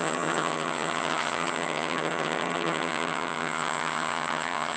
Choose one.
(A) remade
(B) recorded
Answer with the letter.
A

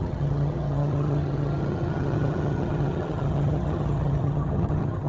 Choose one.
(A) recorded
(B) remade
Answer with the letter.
B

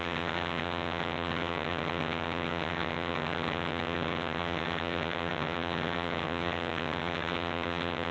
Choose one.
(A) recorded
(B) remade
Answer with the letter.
B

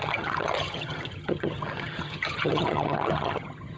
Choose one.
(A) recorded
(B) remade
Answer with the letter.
B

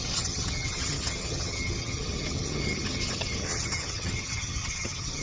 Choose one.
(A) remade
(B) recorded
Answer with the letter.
A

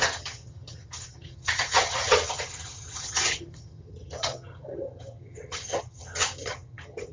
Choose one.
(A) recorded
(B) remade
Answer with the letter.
B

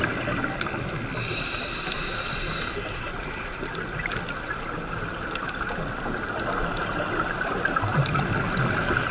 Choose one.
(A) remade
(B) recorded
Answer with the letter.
B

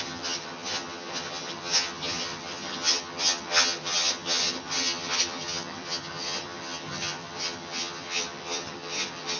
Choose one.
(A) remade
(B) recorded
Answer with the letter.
A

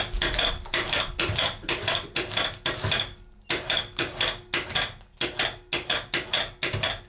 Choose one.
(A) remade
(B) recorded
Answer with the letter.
B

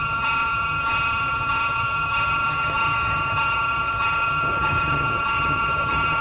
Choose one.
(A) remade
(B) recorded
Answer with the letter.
A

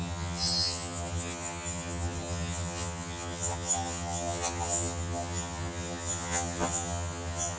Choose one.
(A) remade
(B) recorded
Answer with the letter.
A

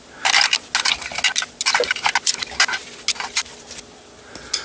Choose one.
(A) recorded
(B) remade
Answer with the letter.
A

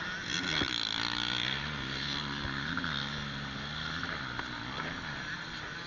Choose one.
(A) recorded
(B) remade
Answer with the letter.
A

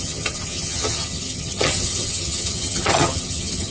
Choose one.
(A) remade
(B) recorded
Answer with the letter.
A